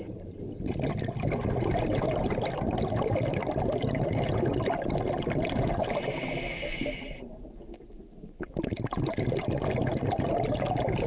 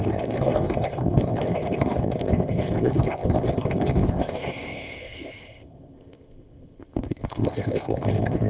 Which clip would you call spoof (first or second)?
second